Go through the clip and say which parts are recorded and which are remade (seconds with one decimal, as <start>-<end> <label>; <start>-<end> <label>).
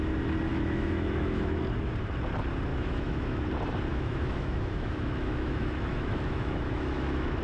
0.0-0.5 recorded; 0.5-1.6 remade; 1.6-2.7 recorded; 2.7-3.5 remade; 3.5-3.9 recorded; 3.9-7.4 remade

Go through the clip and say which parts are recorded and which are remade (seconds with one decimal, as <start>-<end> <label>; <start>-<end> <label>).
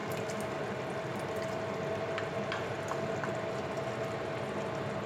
0.0-5.1 recorded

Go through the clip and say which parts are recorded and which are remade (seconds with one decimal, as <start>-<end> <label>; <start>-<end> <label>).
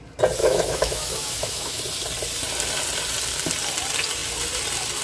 0.0-0.4 recorded; 0.4-1.8 remade; 1.8-5.0 recorded